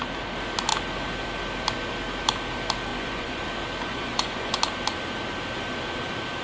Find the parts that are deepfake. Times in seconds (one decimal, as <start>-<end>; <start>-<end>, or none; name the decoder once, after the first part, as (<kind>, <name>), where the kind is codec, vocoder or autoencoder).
2.9-3.4 (vocoder, Vocos); 3.9-4.6